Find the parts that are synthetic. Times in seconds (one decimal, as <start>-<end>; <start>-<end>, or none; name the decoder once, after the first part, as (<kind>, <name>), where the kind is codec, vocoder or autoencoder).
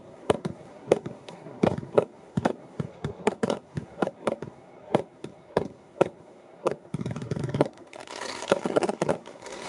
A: 0.0-9.7 (codec, SNAC)